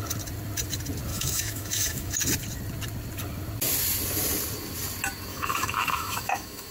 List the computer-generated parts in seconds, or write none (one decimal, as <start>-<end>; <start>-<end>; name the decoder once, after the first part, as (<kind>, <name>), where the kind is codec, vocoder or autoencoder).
1.1-2.1 (autoencoder, DAC-VAE); 5.3-6.7